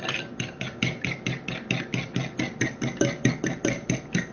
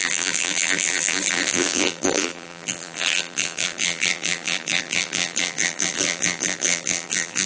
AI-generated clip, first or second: second